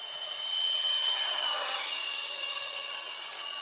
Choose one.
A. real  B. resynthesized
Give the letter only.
B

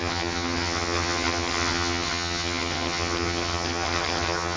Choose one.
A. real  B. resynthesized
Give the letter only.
B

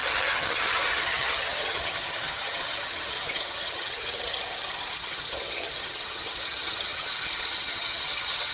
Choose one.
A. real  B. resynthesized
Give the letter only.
B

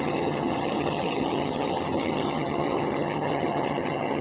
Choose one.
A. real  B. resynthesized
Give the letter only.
B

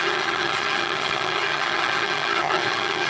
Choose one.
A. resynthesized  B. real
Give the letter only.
A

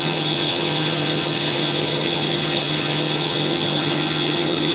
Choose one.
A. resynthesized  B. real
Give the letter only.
A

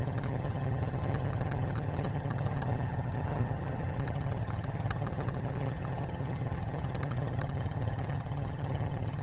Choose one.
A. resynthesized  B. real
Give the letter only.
A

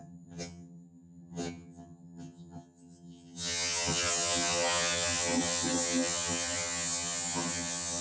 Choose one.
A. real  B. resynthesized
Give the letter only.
B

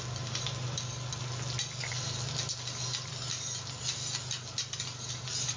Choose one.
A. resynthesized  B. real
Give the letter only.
B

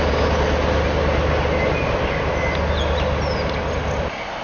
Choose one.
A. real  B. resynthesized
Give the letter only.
A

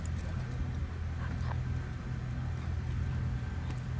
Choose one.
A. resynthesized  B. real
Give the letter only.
B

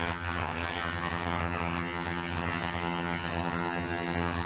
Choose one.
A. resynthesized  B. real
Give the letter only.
A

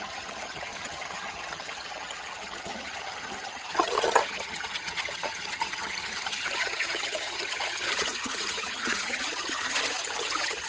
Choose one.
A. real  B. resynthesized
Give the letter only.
B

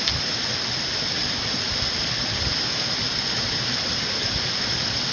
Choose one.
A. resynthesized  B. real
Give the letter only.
B